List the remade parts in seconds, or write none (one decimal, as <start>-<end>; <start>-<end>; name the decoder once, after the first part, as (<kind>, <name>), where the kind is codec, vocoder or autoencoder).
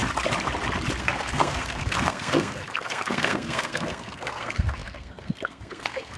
1.0-6.2 (codec, SNAC)